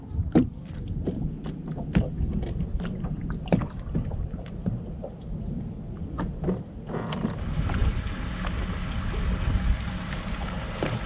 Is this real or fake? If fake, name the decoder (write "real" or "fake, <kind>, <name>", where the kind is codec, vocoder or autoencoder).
real